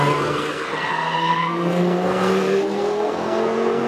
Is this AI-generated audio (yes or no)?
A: yes